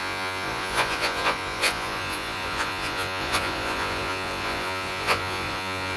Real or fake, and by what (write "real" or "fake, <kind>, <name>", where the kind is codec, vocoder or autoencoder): fake, vocoder, Vocos